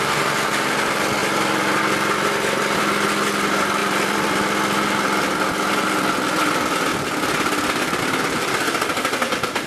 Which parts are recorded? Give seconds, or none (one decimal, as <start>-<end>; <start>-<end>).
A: 0.0-1.2; 1.8-3.8; 4.4-6.9; 8.0-9.7